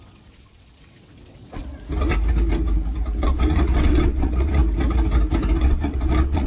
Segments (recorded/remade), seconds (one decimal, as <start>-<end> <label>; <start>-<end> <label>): 0.0-1.6 remade; 1.6-3.2 recorded; 3.2-4.6 remade; 4.6-5.6 recorded; 5.6-6.5 remade